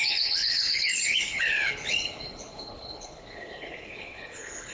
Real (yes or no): no